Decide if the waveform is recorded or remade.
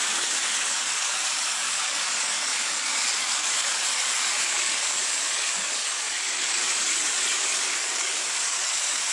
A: remade